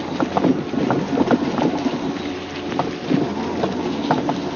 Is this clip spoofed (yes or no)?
no